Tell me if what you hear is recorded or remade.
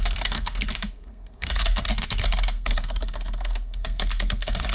remade